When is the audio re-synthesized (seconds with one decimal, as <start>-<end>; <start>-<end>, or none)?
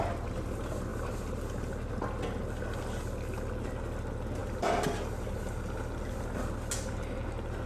none